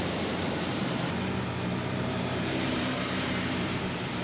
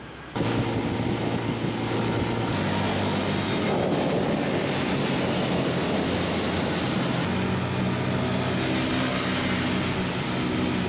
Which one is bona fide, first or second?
second